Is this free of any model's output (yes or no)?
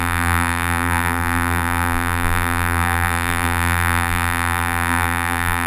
no